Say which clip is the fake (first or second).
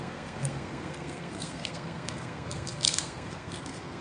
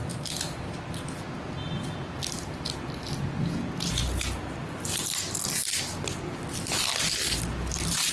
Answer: first